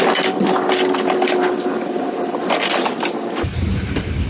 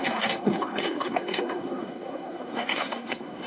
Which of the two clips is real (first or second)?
first